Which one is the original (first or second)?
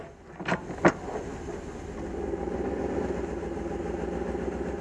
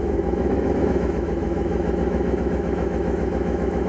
first